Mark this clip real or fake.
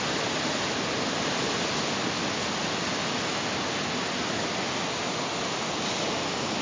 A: real